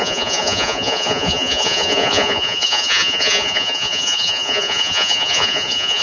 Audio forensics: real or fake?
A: fake